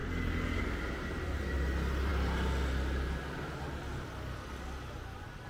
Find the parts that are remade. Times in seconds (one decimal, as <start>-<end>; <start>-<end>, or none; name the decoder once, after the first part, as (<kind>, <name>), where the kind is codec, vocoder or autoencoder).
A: none